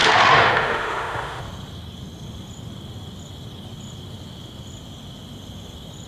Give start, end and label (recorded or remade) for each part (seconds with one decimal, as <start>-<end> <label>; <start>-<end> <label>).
0.0-1.4 remade; 1.4-6.1 recorded